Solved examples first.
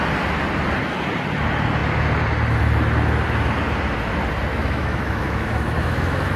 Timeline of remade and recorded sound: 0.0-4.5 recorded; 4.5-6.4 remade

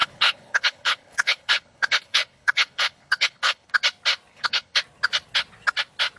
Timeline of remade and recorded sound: 0.0-3.7 remade; 3.7-4.3 recorded; 4.3-4.8 remade; 4.8-6.2 recorded

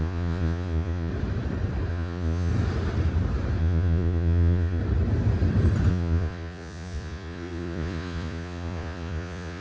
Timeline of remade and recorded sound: 0.0-1.1 remade; 1.1-1.9 recorded; 1.9-2.5 remade; 2.5-3.6 recorded; 3.6-4.8 remade; 4.8-5.9 recorded; 5.9-9.6 remade

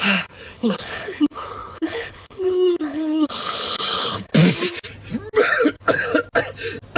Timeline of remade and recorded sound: 0.0-4.3 remade; 4.3-5.4 recorded; 5.4-6.1 remade; 6.1-7.0 recorded

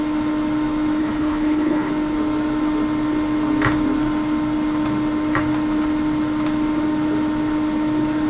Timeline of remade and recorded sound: 0.0-1.0 recorded; 1.0-1.9 remade; 1.9-8.3 recorded

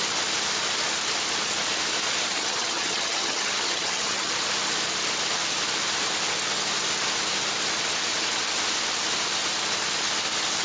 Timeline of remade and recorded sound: 0.0-2.3 recorded; 2.3-4.3 remade; 4.3-10.6 recorded

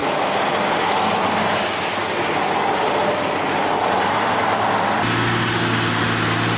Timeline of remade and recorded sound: 0.0-6.6 recorded

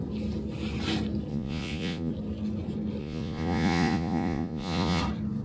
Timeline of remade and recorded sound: 0.0-1.3 recorded; 1.3-2.1 remade; 2.1-3.0 recorded; 3.0-5.0 remade; 5.0-5.4 recorded